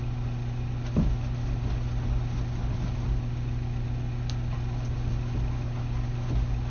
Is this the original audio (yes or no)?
yes